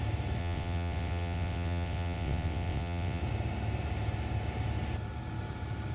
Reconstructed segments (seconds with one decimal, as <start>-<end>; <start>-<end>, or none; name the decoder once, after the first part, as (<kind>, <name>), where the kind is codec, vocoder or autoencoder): 0.4-3.2 (vocoder, WaveNeXt)